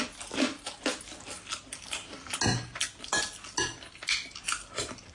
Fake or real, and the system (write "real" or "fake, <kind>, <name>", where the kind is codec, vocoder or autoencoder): real